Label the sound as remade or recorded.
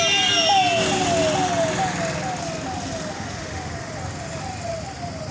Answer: recorded